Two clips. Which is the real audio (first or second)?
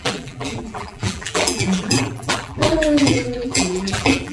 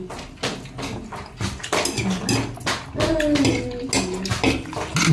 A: second